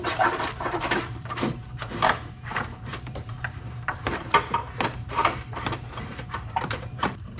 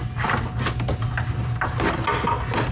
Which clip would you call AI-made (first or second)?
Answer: first